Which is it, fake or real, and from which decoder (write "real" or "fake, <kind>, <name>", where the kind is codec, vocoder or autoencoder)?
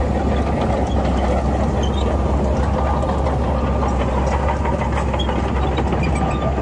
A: real